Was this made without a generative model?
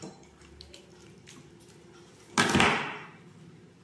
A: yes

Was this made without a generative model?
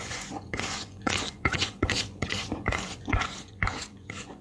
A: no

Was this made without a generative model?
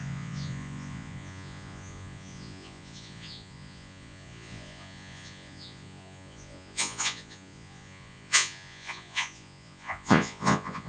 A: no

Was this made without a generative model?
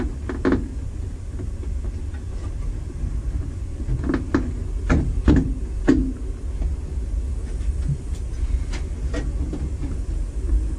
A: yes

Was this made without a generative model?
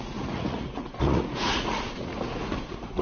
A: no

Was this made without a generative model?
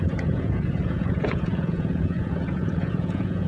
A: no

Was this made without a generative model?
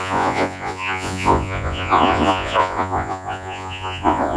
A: no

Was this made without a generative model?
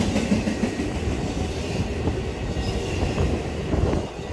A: yes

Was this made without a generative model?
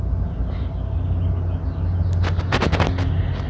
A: yes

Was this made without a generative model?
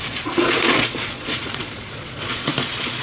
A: no